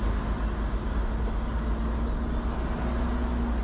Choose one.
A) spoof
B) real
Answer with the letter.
B